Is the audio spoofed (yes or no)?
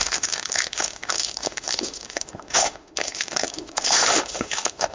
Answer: yes